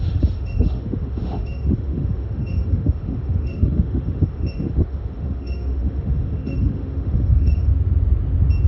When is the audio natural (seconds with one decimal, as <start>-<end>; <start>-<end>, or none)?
7.7-8.7